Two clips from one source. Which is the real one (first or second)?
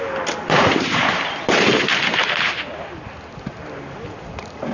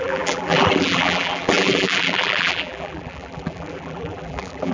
first